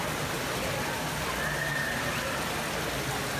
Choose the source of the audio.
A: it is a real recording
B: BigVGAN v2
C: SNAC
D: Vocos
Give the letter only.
A